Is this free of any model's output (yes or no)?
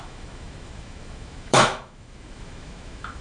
no